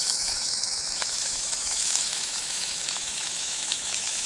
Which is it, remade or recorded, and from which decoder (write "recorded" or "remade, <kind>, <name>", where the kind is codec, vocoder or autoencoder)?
remade, autoencoder, DAC-VAE